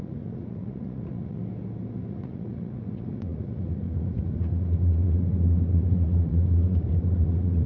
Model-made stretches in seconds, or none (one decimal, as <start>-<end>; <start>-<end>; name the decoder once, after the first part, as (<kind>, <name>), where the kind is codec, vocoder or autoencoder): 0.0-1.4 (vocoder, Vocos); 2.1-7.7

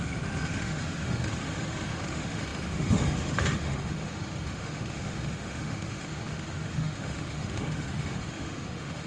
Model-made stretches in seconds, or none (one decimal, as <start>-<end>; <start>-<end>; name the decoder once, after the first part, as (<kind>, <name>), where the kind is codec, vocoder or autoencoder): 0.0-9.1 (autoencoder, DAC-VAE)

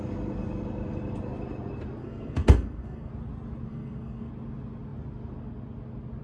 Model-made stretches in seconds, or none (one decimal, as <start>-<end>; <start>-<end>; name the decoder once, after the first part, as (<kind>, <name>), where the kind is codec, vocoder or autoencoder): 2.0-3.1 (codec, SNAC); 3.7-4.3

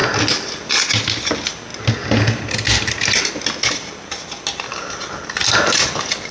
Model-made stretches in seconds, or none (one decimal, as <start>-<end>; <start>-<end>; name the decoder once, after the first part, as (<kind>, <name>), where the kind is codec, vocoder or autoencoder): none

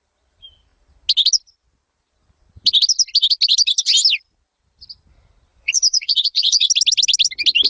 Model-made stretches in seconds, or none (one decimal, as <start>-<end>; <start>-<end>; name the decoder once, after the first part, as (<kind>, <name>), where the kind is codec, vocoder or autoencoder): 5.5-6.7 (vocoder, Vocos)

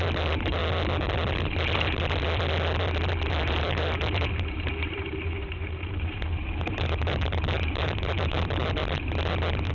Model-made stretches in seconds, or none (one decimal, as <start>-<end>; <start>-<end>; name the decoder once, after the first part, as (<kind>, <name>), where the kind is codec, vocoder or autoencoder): 0.0-0.6 (vocoder, BigVGAN v2); 3.3-8.8